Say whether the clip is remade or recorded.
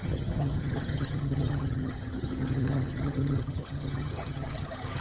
remade